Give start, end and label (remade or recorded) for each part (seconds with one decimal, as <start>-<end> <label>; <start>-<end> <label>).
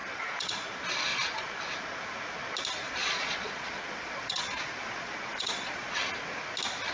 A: 0.0-0.7 remade; 0.7-1.1 recorded; 1.1-1.7 remade; 1.7-3.0 recorded; 3.0-5.9 remade; 5.9-6.9 recorded